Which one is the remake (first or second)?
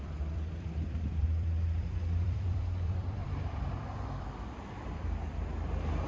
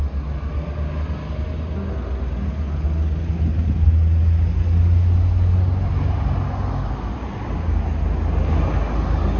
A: first